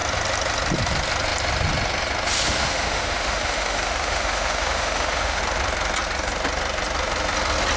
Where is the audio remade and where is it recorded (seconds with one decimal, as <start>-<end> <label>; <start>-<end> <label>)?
0.0-2.6 recorded; 2.6-5.4 remade; 5.4-7.8 recorded